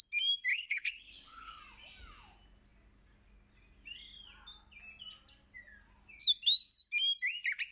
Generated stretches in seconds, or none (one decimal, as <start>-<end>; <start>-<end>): 0.5-1.6